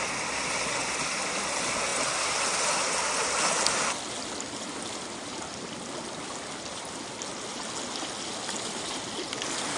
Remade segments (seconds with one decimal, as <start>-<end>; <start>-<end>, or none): 1.9-2.5